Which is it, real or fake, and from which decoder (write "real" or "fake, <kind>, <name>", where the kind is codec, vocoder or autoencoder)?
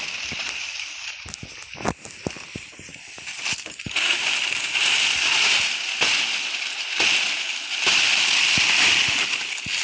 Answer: real